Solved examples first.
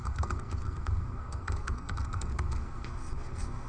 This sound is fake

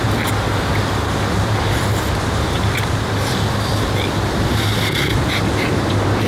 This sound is real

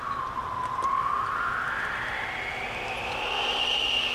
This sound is real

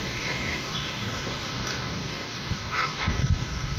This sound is fake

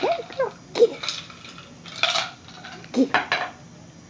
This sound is real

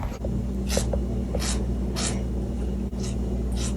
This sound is real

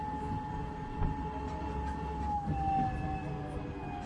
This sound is real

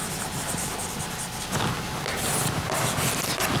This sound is real